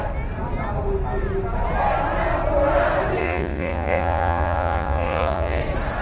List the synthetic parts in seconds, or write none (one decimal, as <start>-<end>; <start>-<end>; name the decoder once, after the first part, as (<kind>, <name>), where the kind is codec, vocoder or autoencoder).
3.2-5.6 (vocoder, Vocos)